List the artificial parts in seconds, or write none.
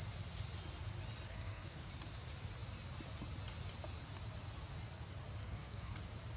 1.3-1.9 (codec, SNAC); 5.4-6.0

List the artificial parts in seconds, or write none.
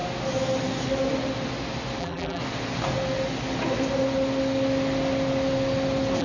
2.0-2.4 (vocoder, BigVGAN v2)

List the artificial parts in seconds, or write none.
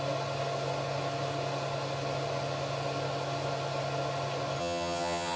4.6-5.4 (vocoder, HiFi-GAN)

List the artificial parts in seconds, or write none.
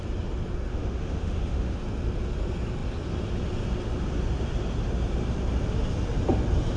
0.7-1.8 (autoencoder, DAC-VAE)